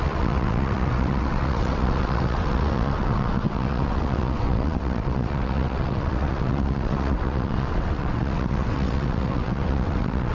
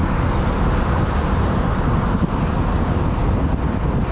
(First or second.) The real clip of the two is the second